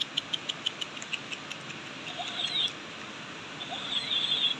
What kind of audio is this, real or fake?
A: real